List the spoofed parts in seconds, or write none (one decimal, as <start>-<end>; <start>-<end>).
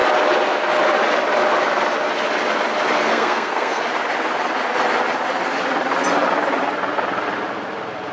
3.1-3.8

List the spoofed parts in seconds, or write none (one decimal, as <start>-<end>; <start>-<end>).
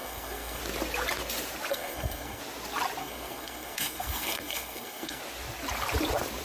0.0-0.6; 1.7-2.4; 3.0-5.2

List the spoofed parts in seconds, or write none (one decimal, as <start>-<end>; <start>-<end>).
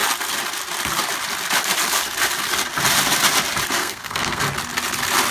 3.8-4.4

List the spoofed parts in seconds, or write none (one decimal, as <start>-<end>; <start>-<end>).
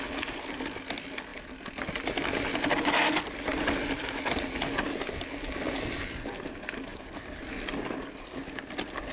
none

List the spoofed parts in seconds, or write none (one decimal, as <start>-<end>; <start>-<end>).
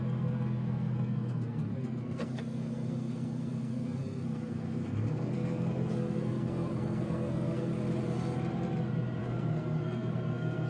0.0-7.7; 9.2-10.7